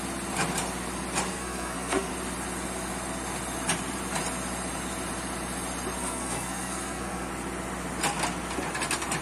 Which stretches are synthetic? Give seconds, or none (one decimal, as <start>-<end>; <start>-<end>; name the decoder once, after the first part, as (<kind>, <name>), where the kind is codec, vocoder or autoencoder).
1.3-2.1 (codec, SNAC); 6.0-7.3